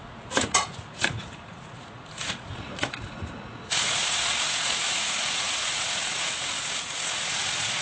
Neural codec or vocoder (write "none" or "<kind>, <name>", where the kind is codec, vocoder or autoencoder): vocoder, Vocos